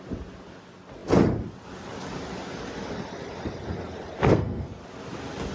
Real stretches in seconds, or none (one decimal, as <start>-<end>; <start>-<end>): 0.0-4.2; 4.8-5.5